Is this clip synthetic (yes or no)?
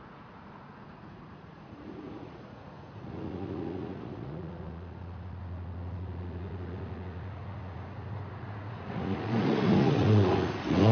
yes